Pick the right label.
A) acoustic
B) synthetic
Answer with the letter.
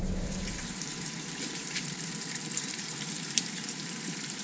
B